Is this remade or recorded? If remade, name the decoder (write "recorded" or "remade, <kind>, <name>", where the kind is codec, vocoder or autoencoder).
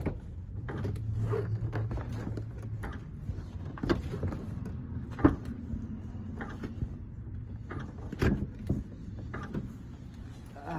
recorded